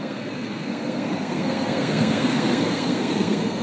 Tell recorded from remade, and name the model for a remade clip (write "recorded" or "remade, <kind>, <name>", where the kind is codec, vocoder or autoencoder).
remade, codec, SNAC